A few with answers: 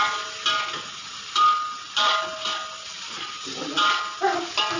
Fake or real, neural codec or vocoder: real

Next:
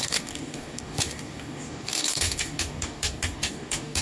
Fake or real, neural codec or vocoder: fake, codec, DAC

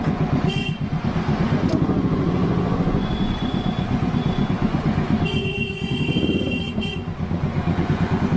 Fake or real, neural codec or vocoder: fake, vocoder, Vocos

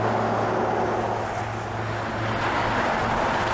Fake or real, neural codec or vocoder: real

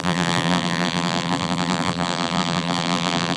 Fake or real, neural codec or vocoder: fake, vocoder, BigVGAN v2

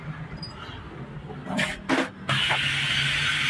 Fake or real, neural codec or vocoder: real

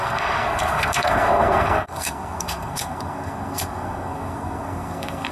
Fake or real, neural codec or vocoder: fake, codec, SNAC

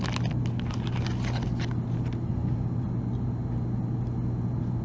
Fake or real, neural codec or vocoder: real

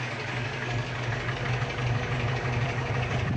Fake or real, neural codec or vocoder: fake, codec, DAC